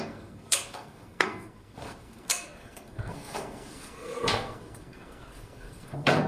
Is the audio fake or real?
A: fake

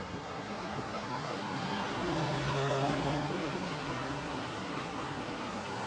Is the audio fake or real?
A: fake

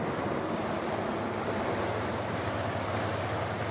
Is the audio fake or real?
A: real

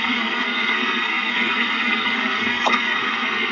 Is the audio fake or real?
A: fake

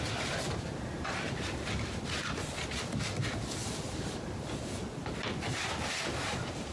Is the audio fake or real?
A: real